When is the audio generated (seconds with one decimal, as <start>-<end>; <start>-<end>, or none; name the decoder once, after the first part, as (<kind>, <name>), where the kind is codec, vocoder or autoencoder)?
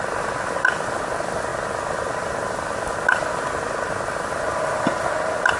none